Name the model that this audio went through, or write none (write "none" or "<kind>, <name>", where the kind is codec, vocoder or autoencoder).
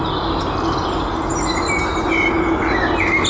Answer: none